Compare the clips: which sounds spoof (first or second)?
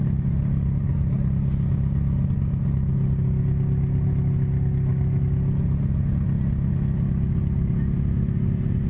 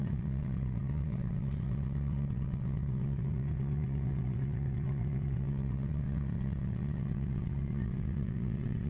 second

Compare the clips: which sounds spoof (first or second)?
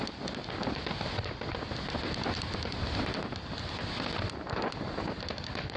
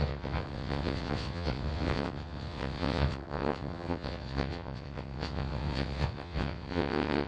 second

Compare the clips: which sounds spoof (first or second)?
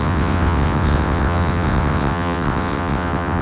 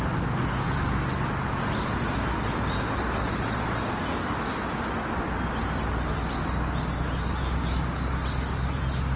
first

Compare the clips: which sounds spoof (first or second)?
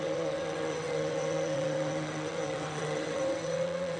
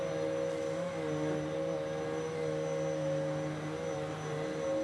first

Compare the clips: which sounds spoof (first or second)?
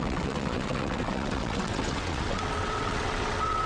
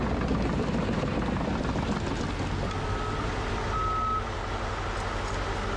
first